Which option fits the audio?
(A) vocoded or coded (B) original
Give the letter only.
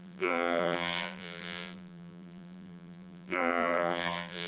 A